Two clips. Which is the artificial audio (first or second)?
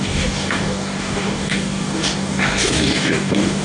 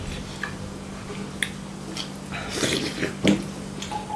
first